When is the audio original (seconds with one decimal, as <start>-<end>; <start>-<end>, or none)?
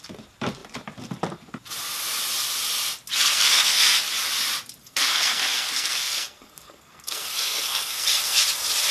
0.0-3.1; 4.1-4.8; 8.4-8.9